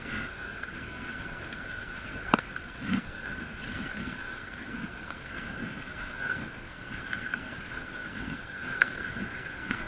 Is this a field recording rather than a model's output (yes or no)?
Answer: no